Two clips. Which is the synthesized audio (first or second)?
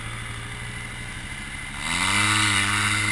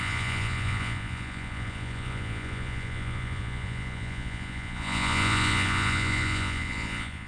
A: second